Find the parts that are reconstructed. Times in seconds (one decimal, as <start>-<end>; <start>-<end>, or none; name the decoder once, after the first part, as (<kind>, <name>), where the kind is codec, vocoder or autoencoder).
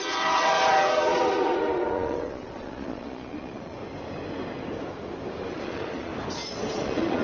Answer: 0.0-3.8 (vocoder, Vocos); 5.5-6.1; 6.7-7.2